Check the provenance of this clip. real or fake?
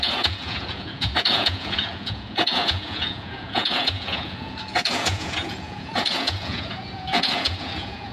fake